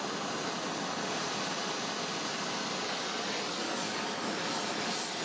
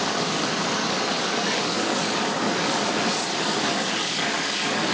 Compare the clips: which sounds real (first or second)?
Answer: first